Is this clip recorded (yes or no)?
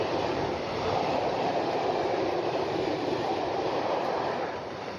no